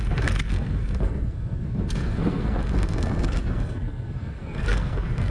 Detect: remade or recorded remade